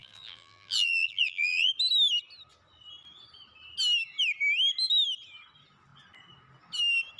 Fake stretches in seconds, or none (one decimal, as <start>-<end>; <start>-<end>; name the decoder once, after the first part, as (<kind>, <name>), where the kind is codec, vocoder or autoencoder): 0.0-1.7 (vocoder, BigVGAN v2)

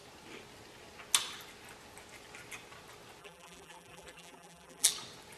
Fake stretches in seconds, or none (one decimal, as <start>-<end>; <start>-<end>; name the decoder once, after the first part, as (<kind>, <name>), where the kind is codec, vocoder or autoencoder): 3.2-4.9 (vocoder, BigVGAN v2)

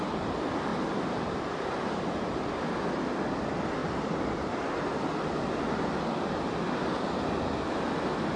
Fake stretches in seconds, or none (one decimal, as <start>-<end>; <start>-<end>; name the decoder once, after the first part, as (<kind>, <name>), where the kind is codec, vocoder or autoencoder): 0.7-2.4 (vocoder, BigVGAN v2); 3.8-4.3

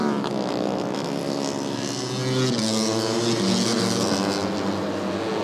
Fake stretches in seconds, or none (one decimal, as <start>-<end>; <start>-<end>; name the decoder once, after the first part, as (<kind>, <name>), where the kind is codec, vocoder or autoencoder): none

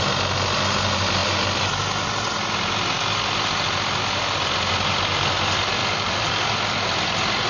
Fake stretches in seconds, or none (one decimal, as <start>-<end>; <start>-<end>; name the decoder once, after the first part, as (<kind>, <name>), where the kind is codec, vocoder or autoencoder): 5.8-6.8 (vocoder, BigVGAN v2)

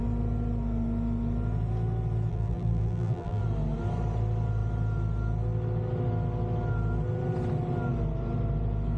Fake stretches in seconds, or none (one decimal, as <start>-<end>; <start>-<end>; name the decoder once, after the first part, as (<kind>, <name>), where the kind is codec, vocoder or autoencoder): 2.3-3.4 (vocoder, BigVGAN v2)

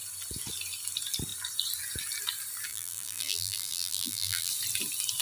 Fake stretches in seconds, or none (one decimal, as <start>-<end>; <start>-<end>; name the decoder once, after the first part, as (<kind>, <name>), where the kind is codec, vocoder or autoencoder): 2.7-4.5 (vocoder, BigVGAN v2)

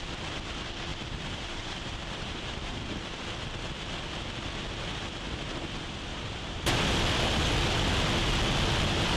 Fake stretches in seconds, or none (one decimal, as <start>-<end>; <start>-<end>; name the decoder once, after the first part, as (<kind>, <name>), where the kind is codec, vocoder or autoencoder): 0.9-3.2 (vocoder, BigVGAN v2); 6.1-6.9